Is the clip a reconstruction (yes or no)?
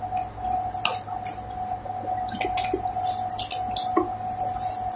no